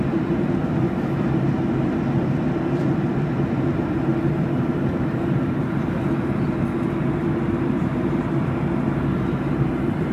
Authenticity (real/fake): real